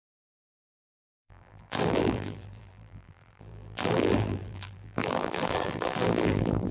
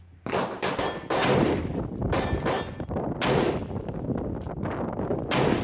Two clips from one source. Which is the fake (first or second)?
first